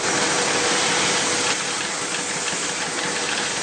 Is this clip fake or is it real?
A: real